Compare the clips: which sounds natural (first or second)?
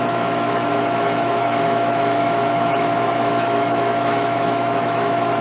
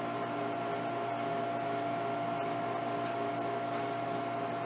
second